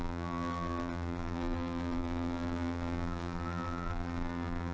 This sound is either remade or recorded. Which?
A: remade